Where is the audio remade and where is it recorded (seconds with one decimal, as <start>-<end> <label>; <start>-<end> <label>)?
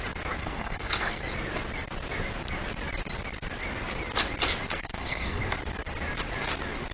0.0-0.4 recorded; 0.4-1.2 remade; 1.2-4.7 recorded; 4.7-5.4 remade; 5.4-6.9 recorded